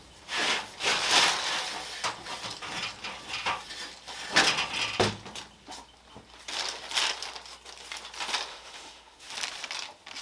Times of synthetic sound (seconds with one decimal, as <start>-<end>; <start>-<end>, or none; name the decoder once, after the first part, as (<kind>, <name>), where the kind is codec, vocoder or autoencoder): 8.5-9.3 (autoencoder, DAC-VAE)